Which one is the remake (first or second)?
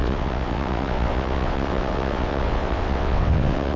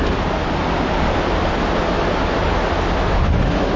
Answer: first